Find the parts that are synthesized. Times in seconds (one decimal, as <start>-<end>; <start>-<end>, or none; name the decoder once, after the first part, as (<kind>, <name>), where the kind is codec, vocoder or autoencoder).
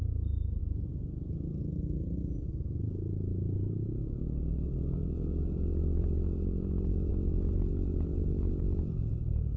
none